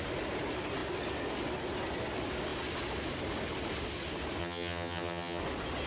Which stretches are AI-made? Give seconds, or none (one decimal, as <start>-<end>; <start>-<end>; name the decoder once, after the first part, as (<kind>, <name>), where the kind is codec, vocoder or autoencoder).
4.4-5.4 (vocoder, HiFi-GAN)